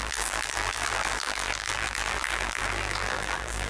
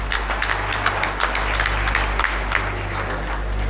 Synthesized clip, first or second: first